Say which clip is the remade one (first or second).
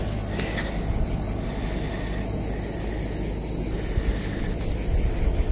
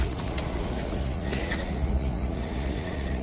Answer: second